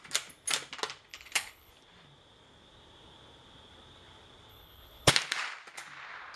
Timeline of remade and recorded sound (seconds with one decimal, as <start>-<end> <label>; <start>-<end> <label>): 0.0-1.1 recorded; 1.1-1.7 remade; 1.7-4.5 recorded; 4.5-5.1 remade; 5.1-6.4 recorded